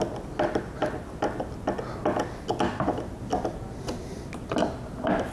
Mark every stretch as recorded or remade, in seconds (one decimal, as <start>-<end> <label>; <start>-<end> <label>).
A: 0.0-5.3 recorded